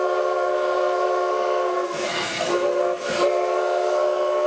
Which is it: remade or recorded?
remade